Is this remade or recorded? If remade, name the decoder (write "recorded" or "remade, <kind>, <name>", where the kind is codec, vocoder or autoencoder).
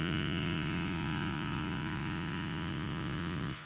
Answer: remade, vocoder, Vocos